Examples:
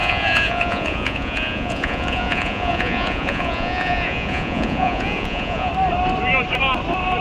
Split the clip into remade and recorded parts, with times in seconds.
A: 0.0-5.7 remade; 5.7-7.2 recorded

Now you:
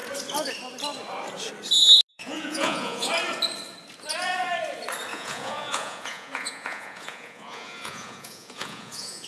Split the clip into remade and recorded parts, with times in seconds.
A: 0.0-2.1 recorded; 2.1-3.1 remade; 3.1-5.1 recorded; 5.1-9.3 remade

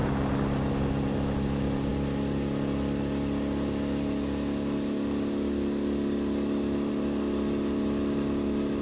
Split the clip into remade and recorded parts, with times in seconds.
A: 0.0-8.8 recorded